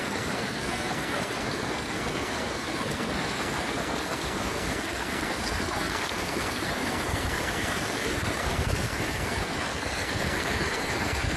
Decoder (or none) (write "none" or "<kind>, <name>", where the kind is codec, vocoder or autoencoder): codec, SNAC